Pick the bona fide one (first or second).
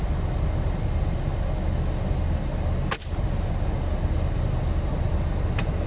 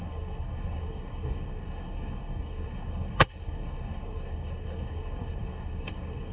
first